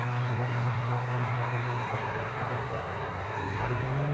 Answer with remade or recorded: remade